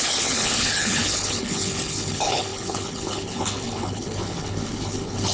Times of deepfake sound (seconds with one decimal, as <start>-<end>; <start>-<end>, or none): 0.0-5.3